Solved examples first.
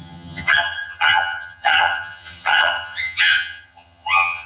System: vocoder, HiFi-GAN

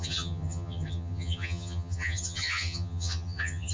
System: vocoder, HiFi-GAN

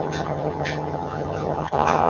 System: vocoder, HiFi-GAN